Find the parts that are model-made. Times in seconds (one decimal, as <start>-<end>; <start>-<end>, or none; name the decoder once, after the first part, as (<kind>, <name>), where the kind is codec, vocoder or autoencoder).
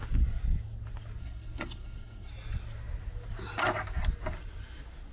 1.2-2.3 (codec, SNAC)